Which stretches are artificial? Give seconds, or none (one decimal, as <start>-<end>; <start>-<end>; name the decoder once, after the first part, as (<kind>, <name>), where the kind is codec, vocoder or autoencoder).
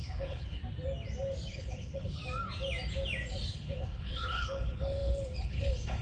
0.0-0.6 (codec, HILCodec); 1.5-2.2; 3.5-6.0